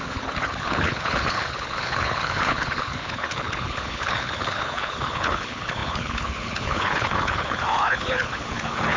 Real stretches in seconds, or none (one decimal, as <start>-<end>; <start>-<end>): none